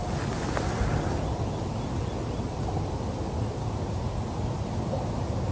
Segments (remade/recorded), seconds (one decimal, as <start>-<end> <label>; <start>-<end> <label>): 0.0-5.5 recorded